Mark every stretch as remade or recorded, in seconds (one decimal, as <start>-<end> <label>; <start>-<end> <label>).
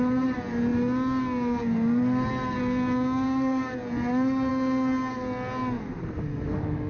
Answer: 0.0-6.9 recorded